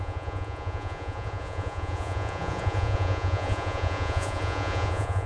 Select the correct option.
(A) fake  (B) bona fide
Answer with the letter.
A